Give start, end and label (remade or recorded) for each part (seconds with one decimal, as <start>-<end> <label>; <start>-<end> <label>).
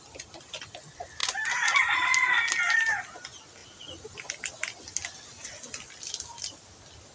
0.0-7.1 recorded